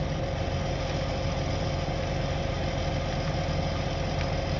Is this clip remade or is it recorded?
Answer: recorded